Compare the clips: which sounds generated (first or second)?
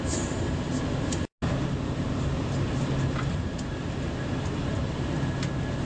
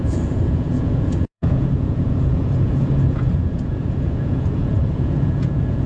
second